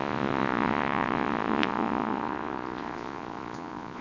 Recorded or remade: remade